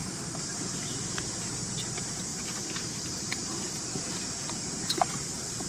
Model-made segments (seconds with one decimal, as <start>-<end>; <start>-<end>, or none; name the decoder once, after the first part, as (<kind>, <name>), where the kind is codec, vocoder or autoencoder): 0.0-1.5 (vocoder, BigVGAN v2); 2.3-4.2